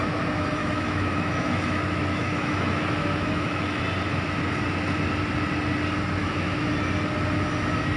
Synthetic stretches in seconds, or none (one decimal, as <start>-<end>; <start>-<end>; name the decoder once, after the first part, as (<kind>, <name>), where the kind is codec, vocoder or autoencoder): 0.6-3.8 (autoencoder, DAC-VAE); 6.2-6.7